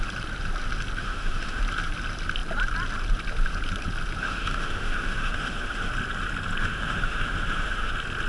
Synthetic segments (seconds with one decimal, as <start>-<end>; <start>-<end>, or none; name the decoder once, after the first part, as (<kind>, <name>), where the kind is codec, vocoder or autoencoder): 1.0-1.6 (autoencoder, DAC-VAE); 4.2-5.9; 6.6-7.9